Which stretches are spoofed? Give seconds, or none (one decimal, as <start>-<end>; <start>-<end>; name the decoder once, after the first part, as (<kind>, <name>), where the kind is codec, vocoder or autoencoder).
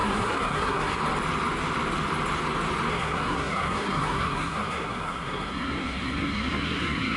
0.0-1.0 (codec, SNAC); 2.9-7.2